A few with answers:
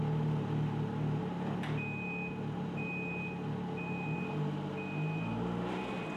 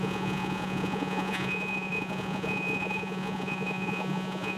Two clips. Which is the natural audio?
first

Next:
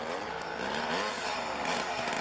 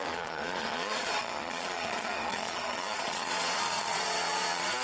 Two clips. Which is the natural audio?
first